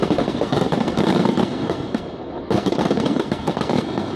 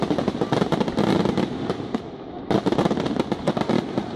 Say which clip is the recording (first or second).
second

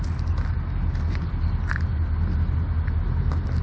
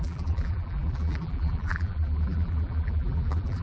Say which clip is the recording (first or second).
first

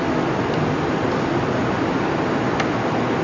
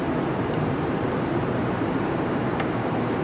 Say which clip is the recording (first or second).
first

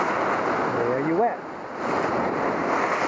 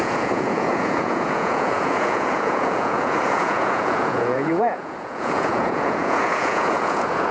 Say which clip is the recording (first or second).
first